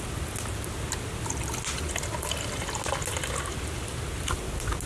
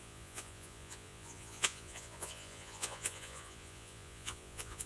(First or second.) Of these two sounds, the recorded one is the first